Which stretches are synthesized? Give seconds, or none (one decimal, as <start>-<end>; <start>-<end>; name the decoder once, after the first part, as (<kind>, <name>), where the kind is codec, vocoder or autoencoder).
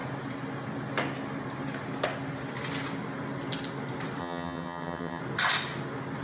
4.2-5.2 (vocoder, HiFi-GAN)